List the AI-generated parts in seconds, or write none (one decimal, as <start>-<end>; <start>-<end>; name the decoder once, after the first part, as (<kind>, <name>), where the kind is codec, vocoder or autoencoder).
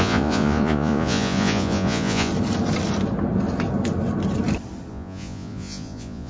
0.0-2.3 (vocoder, Vocos); 4.9-6.3